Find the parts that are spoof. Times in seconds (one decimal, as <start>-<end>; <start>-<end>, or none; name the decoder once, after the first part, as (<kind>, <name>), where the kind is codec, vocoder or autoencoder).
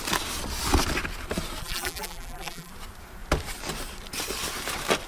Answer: 1.6-2.7 (vocoder, BigVGAN v2)